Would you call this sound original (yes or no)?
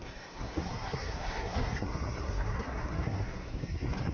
no